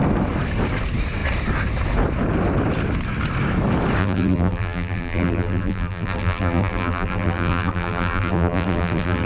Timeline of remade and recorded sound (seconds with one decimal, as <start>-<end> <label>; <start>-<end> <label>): 0.0-4.0 recorded; 4.0-9.3 remade